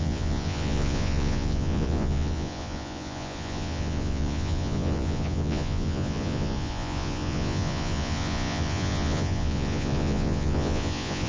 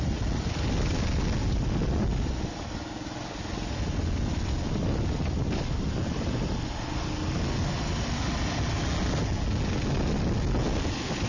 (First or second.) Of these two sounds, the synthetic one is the first